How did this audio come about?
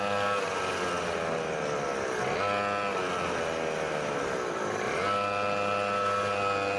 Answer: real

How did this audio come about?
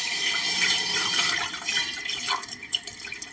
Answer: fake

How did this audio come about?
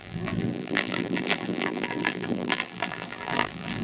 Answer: fake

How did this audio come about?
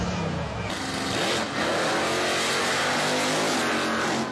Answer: real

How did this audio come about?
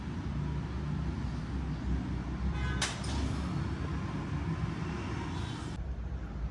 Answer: real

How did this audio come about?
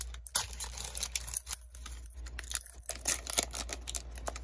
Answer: real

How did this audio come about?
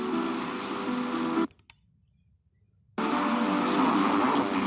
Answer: real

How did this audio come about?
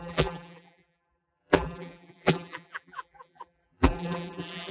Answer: fake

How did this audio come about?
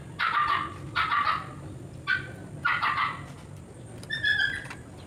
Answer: fake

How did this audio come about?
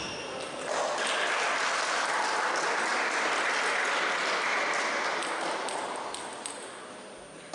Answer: real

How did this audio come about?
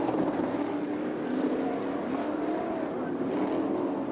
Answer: real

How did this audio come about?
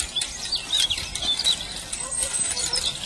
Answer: real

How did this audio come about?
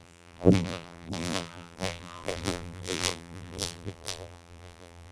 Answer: fake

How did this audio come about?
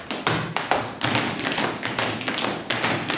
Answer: real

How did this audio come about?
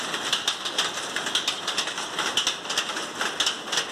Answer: real